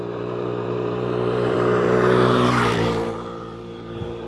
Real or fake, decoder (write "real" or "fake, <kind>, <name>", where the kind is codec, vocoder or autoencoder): fake, vocoder, BigVGAN v2